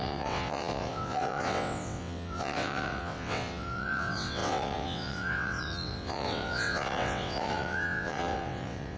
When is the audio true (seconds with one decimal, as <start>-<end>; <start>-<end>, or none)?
none